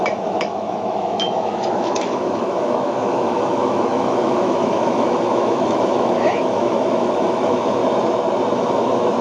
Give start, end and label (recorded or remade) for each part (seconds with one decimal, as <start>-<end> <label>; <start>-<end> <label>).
0.0-7.8 remade; 7.8-8.5 recorded; 8.5-9.2 remade

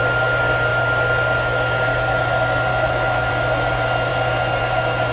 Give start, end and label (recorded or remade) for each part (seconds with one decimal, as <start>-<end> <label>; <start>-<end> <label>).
0.0-2.7 recorded; 2.7-3.3 remade; 3.3-5.1 recorded

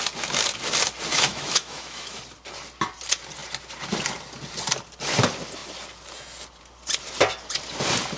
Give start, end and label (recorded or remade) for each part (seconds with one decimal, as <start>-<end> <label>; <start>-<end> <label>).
0.0-1.1 recorded; 1.1-2.2 remade; 2.2-8.2 recorded

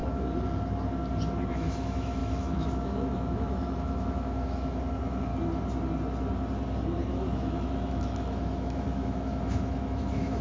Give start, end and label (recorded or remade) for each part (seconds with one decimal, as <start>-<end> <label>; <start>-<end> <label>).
0.0-1.5 recorded; 1.5-5.3 remade; 5.3-7.1 recorded; 7.1-10.4 remade

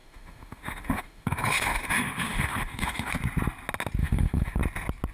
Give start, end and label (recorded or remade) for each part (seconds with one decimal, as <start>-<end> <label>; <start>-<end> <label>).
0.0-3.1 remade; 3.1-4.0 recorded; 4.0-4.6 remade; 4.6-5.1 recorded

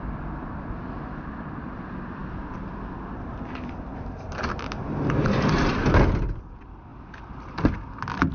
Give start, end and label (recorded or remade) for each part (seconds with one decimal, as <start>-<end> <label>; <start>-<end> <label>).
0.0-8.3 recorded